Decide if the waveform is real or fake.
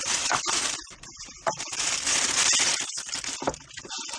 fake